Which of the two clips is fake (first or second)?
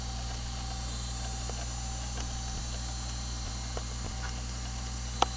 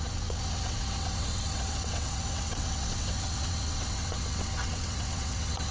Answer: second